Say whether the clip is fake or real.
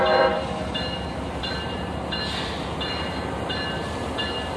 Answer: fake